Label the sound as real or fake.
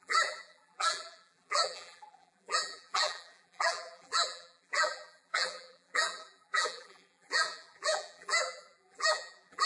fake